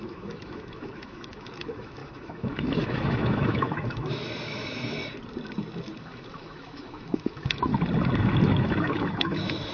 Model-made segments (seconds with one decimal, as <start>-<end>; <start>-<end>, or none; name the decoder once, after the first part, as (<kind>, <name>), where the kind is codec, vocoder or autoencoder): 0.0-5.0 (autoencoder, DAC-VAE); 6.0-7.7; 8.6-9.7

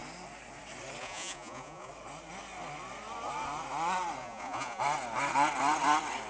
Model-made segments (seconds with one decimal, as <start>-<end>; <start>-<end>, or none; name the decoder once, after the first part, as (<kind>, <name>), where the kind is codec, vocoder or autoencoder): 1.0-1.9 (vocoder, Vocos); 4.2-4.8

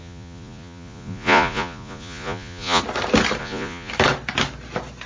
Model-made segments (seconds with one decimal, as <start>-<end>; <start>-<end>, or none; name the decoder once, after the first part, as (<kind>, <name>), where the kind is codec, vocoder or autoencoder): 0.0-2.8 (vocoder, Vocos); 3.4-3.9

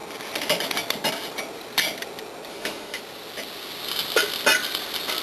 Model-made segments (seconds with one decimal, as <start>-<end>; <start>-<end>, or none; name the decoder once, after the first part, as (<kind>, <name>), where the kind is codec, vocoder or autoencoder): 2.5-3.0 (autoencoder, DAC-VAE)